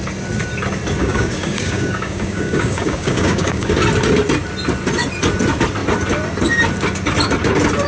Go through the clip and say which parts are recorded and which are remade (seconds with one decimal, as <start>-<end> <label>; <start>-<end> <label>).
0.0-1.0 recorded; 1.0-3.7 remade; 3.7-7.9 recorded